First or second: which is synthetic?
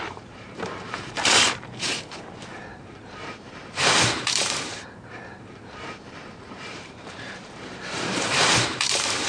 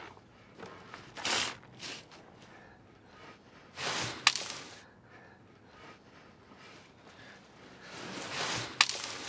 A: first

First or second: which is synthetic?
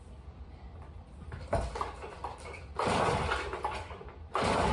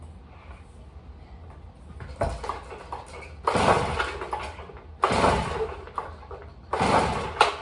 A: first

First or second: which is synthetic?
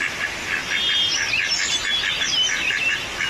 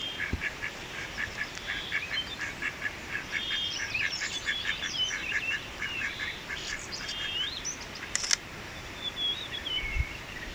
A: second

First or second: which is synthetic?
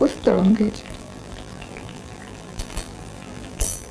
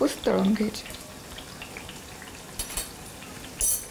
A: first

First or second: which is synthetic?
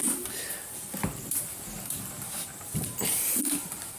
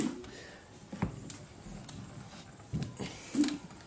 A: first